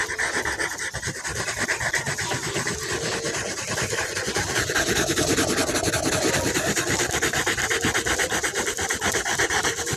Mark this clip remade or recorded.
remade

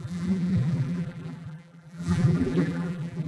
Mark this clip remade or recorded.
remade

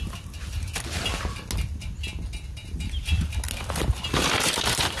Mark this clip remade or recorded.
recorded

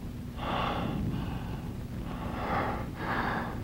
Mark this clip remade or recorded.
remade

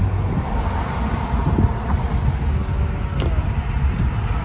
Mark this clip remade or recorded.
recorded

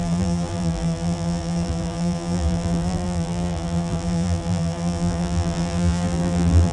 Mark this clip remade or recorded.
remade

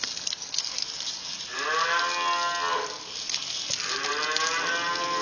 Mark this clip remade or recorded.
recorded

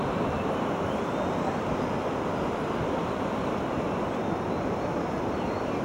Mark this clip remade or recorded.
recorded